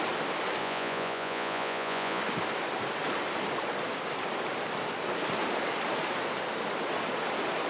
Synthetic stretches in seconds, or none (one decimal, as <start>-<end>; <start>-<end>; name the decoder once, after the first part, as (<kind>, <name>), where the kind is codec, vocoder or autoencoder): 0.6-2.2 (vocoder, Vocos)

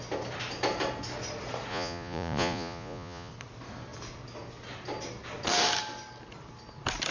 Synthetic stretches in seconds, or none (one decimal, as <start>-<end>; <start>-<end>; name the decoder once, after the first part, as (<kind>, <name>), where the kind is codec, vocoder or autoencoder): 1.7-3.3 (vocoder, Vocos)

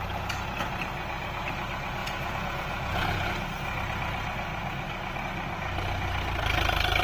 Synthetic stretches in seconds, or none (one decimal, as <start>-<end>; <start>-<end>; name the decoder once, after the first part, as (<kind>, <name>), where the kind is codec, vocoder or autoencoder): 2.0-3.3 (vocoder, Vocos)

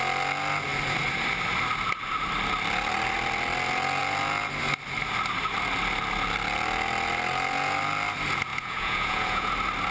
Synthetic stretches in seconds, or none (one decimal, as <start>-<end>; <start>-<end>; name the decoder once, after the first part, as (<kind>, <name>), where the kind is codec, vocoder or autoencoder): 8.5-9.5 (vocoder, Vocos)

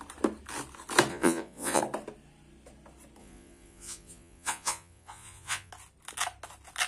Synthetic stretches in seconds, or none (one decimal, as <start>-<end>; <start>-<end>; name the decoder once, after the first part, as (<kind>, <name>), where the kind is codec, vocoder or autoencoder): 1.1-1.8 (vocoder, Vocos); 3.2-5.7

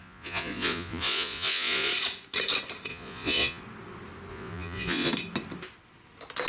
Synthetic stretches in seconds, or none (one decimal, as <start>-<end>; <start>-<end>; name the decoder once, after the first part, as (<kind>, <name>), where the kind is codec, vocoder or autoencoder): 0.0-1.9 (vocoder, Vocos); 2.9-3.6; 4.3-5.1